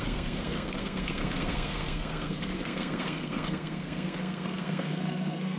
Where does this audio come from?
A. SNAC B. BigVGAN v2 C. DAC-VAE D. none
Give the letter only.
A